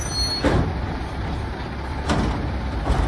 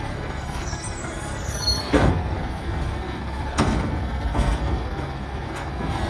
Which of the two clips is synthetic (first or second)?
second